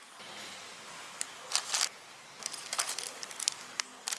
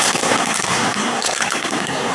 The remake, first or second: second